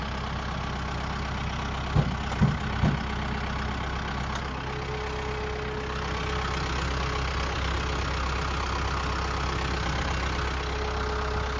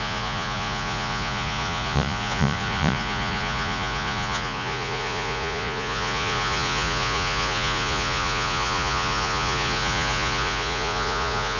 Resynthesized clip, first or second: second